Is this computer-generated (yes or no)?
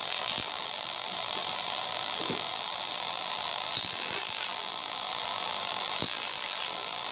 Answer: yes